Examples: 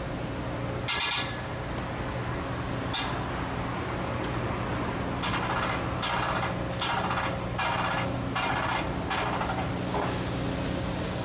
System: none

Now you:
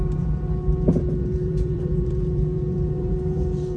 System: vocoder, BigVGAN v2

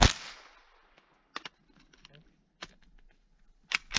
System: none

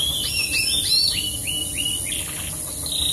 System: none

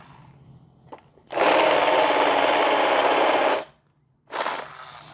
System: none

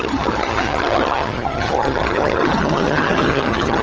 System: vocoder, HiFi-GAN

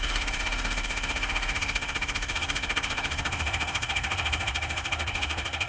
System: codec, SNAC